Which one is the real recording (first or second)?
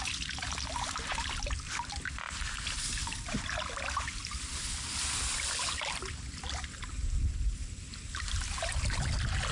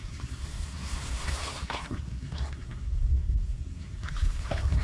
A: first